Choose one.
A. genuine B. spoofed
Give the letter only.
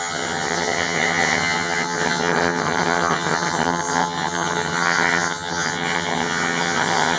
B